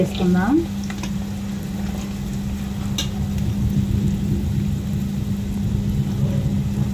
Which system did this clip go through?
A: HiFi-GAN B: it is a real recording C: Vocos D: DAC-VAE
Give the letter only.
B